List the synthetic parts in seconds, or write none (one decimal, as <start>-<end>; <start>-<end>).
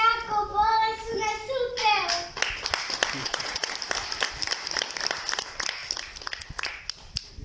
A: 3.2-3.7